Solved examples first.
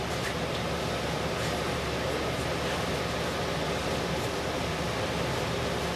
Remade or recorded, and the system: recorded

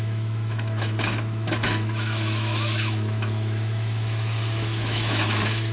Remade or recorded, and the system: remade, autoencoder, DAC-VAE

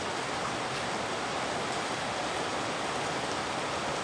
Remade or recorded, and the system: recorded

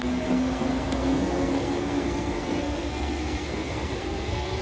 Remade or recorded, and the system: remade, codec, SNAC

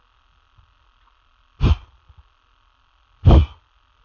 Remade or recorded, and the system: recorded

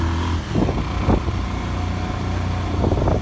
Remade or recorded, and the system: recorded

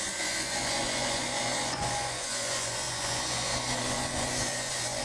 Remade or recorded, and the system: remade, vocoder, Vocos